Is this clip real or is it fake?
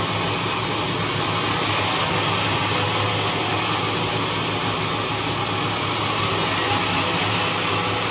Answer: real